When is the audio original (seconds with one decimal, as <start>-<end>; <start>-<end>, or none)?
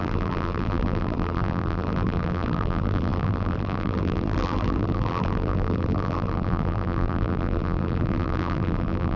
none